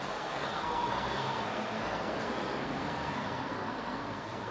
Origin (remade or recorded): remade